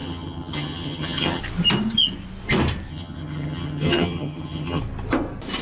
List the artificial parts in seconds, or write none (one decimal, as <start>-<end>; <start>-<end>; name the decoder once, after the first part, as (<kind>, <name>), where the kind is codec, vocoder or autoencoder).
0.0-1.4 (vocoder, HiFi-GAN); 2.9-4.8